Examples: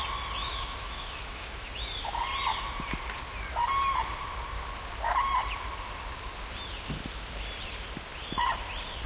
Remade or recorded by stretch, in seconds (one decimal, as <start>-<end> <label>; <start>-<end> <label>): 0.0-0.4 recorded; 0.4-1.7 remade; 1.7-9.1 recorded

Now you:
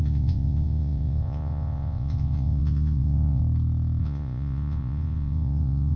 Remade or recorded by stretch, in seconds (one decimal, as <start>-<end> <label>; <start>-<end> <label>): 0.0-3.4 remade; 3.4-4.0 recorded; 4.0-6.0 remade

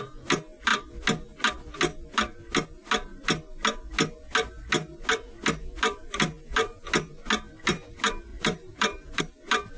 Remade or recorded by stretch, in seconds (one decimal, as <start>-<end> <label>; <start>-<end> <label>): 0.0-8.3 recorded; 8.3-9.2 remade; 9.2-9.8 recorded